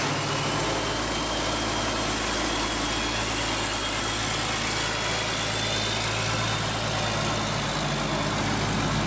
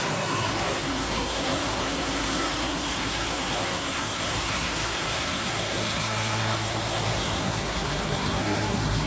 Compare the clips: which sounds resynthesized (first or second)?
second